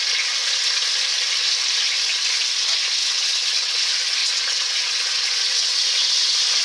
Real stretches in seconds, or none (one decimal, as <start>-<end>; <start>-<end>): 0.0-3.0; 3.8-4.2; 6.1-6.6